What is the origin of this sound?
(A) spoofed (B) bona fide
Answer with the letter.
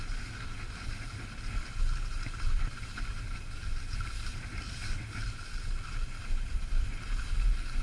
B